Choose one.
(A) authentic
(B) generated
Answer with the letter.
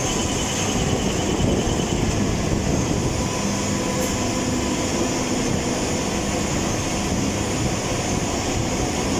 A